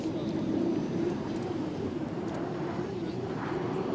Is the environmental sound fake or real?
fake